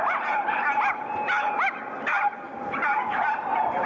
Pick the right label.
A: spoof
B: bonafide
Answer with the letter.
B